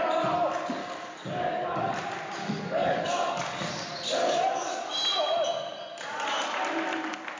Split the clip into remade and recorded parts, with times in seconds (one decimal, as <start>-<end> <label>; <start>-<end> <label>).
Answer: 0.0-0.8 recorded; 0.8-1.9 remade; 1.9-2.4 recorded; 2.4-3.7 remade; 3.7-4.2 recorded; 4.2-4.9 remade; 4.9-7.4 recorded